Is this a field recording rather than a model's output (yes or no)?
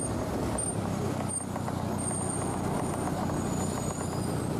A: yes